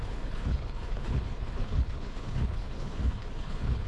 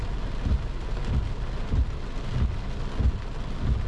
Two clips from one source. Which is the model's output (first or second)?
first